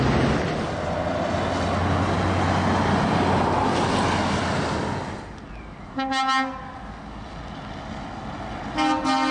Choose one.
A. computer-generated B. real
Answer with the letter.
B